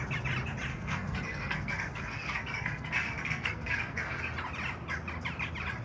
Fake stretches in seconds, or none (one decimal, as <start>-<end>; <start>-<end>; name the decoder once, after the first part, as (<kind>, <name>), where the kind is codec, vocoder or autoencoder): 0.7-4.2 (codec, SNAC)